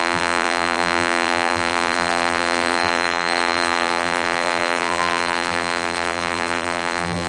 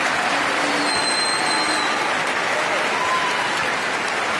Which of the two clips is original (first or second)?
second